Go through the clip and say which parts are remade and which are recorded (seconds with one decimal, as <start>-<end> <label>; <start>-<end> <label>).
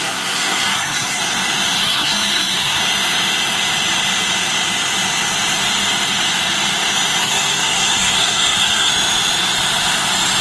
0.0-1.2 remade; 1.2-1.8 recorded; 1.8-2.8 remade; 2.8-7.2 recorded; 7.2-8.9 remade; 8.9-10.4 recorded